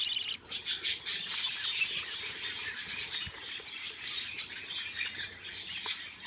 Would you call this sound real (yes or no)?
yes